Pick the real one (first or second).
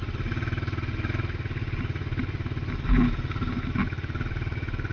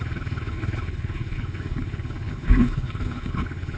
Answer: first